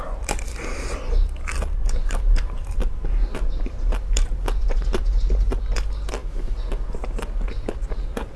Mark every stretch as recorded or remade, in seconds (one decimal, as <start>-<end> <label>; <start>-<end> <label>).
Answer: 0.0-1.8 recorded; 1.8-5.3 remade; 5.3-8.4 recorded